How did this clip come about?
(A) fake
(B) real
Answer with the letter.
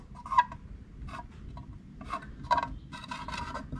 B